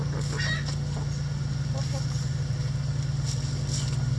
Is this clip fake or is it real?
real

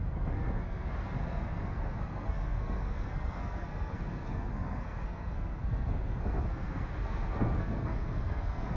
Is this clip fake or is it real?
fake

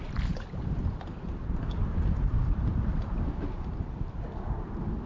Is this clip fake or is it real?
fake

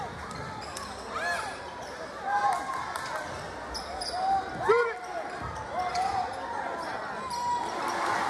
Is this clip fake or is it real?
real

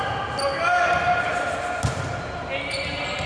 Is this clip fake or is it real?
real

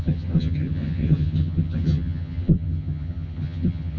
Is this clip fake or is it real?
fake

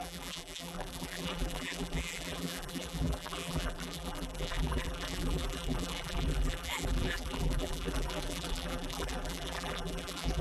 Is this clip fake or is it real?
fake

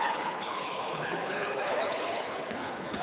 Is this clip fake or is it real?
fake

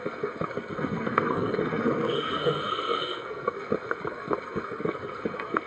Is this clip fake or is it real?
fake